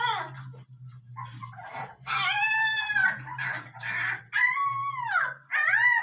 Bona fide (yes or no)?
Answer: yes